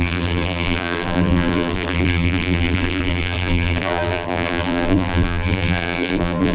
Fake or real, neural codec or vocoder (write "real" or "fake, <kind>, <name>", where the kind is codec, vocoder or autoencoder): fake, vocoder, BigVGAN v2